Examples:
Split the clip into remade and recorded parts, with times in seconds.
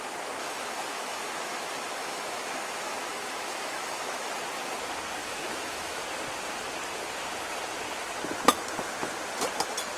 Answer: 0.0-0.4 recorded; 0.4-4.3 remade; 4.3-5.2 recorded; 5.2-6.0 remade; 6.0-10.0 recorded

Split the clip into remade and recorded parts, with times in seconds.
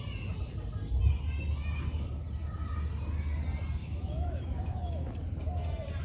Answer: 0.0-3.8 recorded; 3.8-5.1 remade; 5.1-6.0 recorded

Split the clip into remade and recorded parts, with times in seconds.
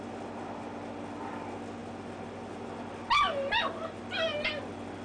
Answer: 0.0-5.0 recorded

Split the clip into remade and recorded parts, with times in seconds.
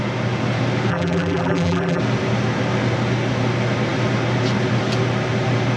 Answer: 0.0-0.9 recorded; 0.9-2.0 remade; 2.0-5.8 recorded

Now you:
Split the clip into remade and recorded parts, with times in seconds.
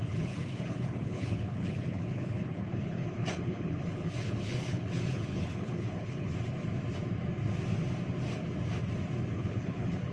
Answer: 0.0-6.3 remade; 6.3-9.3 recorded; 9.3-10.1 remade